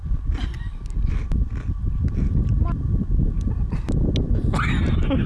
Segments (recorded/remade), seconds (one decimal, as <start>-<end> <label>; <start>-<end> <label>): 0.0-5.3 recorded